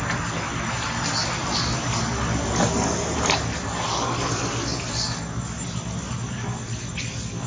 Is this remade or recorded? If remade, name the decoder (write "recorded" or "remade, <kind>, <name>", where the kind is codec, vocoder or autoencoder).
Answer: recorded